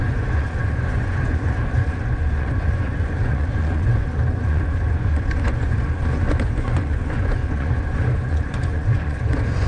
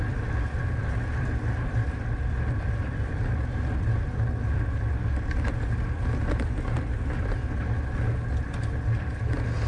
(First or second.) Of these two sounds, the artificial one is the first